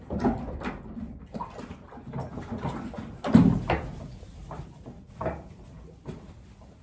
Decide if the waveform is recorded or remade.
recorded